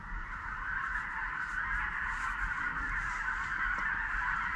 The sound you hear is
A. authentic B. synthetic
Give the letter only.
A